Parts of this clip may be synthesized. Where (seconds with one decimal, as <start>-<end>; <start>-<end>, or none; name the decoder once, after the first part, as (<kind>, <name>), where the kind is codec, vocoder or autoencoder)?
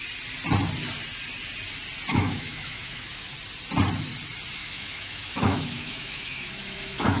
2.1-3.3 (autoencoder, DAC-VAE); 4.6-7.2